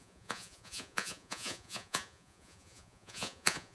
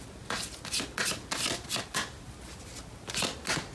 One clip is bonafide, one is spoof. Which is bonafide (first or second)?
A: second